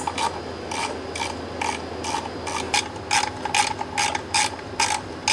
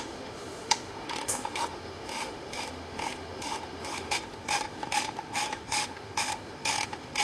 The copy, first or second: second